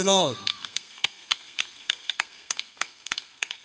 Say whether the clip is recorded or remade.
remade